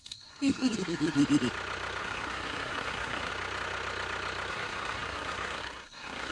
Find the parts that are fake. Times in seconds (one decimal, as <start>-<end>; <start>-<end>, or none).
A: 0.0-1.2; 2.0-3.3; 4.5-6.3